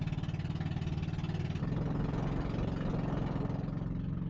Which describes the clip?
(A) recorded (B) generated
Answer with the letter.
A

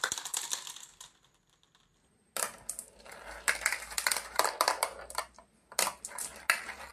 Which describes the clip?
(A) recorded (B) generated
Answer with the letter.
A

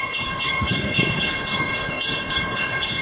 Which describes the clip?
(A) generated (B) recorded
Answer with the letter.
A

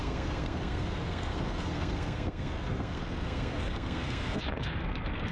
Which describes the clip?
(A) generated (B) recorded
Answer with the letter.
A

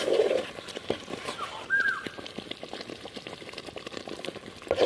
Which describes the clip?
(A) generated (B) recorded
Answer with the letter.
A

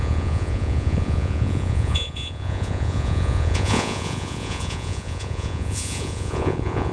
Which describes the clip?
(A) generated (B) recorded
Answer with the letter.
A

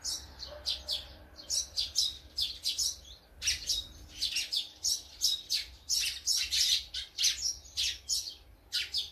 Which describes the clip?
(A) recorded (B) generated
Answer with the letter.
A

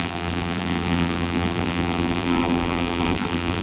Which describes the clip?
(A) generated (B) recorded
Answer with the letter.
A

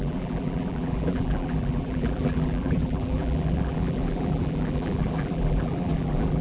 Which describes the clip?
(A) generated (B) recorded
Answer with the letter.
A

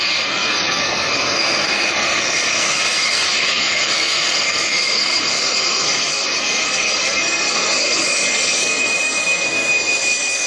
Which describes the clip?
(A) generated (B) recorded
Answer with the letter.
A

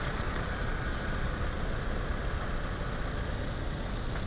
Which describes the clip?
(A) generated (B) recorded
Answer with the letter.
B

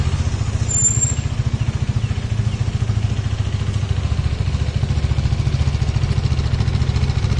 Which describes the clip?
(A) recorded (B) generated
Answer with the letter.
A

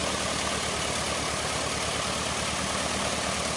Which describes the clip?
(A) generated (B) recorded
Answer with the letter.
B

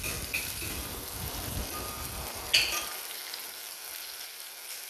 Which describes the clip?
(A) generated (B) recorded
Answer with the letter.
B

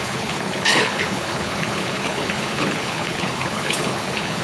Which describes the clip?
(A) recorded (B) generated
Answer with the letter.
B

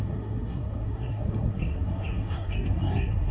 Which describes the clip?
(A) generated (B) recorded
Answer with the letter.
A